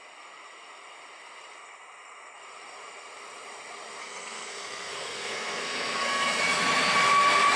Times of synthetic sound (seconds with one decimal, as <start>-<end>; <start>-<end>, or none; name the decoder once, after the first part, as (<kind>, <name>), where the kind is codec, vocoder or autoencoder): 4.0-6.4 (codec, SNAC)